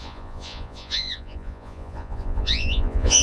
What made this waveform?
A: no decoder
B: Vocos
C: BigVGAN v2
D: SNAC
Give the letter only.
B